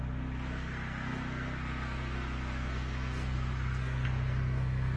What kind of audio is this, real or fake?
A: fake